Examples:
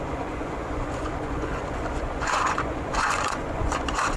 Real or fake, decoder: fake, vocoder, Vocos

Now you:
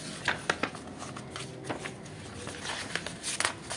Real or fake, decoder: real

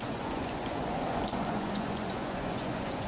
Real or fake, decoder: fake, vocoder, Vocos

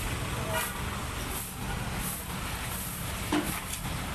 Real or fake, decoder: real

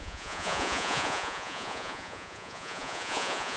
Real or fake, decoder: fake, vocoder, Vocos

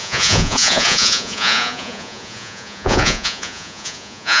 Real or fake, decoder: fake, vocoder, Vocos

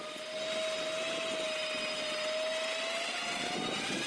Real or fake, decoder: real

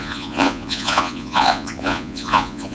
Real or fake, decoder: fake, vocoder, Vocos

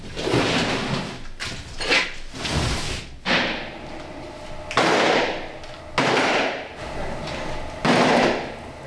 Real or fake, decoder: real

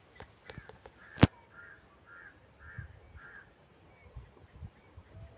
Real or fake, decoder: real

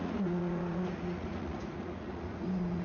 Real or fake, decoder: fake, vocoder, Vocos